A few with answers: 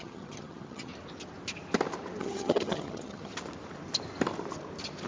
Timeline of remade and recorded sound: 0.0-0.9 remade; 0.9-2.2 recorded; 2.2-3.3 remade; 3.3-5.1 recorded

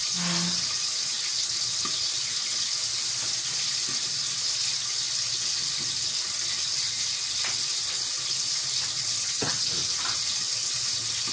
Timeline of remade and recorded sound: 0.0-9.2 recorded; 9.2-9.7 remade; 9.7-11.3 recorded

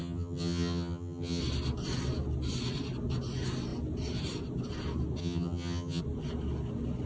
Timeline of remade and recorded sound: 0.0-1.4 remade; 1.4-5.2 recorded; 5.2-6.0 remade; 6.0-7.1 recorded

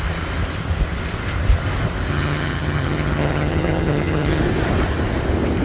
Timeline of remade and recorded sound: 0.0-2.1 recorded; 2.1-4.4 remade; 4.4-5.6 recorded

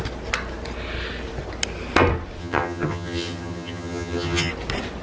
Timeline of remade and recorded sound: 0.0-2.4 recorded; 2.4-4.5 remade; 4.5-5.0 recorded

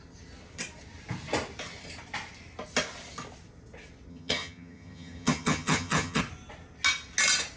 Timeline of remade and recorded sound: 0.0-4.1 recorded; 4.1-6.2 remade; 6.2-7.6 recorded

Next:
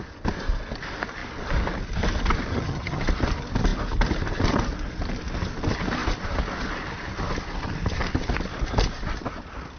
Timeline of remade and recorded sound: 0.0-2.5 recorded; 2.5-3.0 remade; 3.0-9.8 recorded

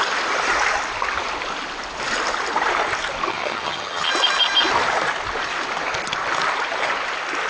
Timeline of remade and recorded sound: 0.0-3.3 recorded; 3.3-4.1 remade; 4.1-7.5 recorded